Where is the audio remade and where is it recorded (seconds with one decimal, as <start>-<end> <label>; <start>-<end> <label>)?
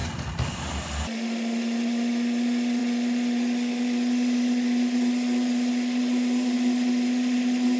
0.0-7.8 recorded